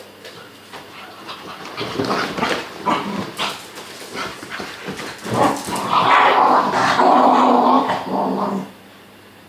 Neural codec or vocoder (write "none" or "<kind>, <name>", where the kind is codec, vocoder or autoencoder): none